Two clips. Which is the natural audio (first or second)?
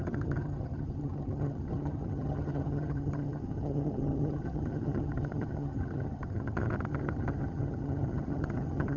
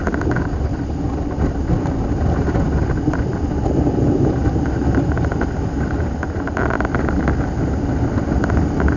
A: second